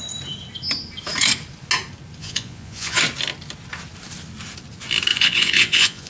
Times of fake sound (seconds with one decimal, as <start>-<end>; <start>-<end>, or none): 2.2-3.0; 5.1-6.1